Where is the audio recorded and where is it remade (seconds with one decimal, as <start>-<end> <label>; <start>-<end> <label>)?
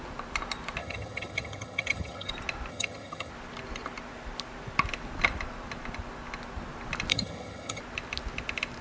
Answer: 0.0-0.8 recorded; 0.8-2.3 remade; 2.3-2.7 recorded; 2.7-3.3 remade; 3.3-7.1 recorded; 7.1-7.8 remade; 7.8-8.8 recorded